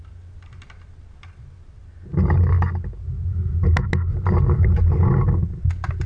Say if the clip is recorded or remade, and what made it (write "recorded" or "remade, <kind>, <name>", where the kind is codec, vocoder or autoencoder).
recorded